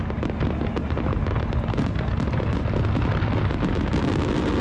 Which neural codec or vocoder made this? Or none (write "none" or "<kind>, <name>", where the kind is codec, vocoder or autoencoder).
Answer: none